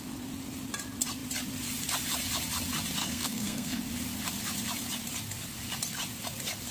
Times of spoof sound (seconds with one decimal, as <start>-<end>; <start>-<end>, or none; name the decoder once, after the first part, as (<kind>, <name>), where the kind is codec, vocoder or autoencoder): 3.0-3.8 (codec, SNAC)